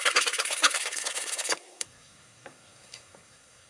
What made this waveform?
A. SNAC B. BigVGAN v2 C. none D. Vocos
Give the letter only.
A